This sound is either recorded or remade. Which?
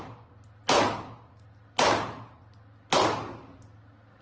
recorded